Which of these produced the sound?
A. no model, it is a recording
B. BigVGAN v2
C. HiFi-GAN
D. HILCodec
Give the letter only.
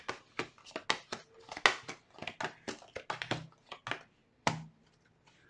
A